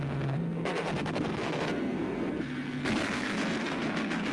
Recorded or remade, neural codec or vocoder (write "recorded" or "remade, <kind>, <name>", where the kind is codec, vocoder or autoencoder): remade, codec, SNAC